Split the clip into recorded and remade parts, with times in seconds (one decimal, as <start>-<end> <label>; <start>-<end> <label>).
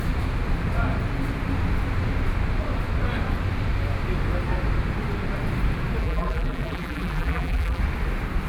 0.0-6.0 recorded; 6.0-7.8 remade; 7.8-8.5 recorded